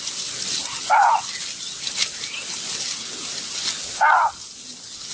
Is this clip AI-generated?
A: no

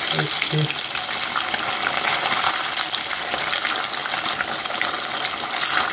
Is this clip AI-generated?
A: no